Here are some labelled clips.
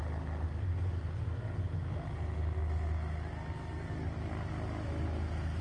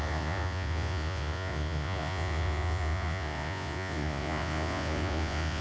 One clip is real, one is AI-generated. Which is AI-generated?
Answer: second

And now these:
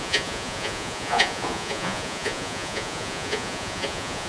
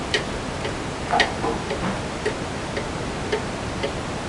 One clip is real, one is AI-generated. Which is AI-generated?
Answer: first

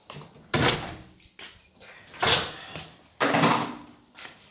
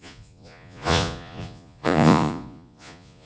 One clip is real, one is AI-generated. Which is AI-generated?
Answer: second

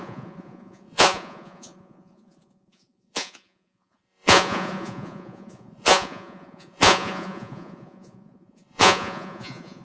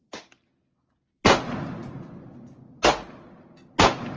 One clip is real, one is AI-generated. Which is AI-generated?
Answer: first